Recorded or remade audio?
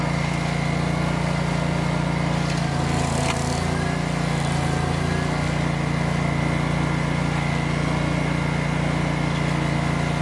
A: recorded